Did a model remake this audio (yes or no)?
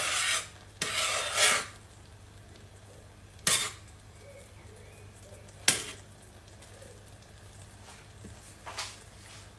no